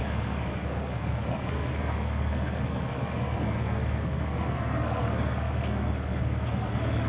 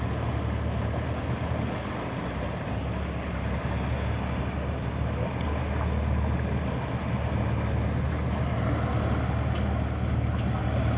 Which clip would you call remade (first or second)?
first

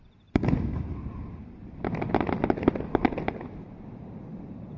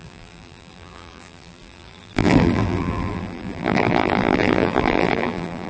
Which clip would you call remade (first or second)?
second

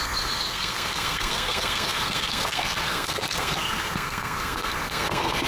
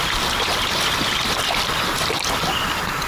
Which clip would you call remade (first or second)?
first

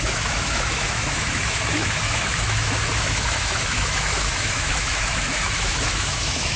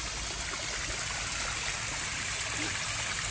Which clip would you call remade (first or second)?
first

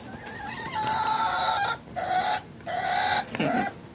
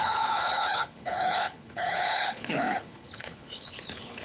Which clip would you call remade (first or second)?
second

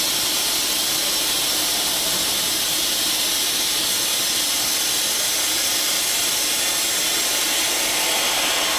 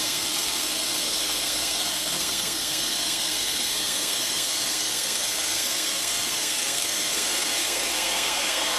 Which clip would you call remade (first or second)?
second